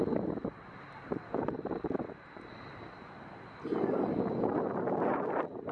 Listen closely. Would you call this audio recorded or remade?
recorded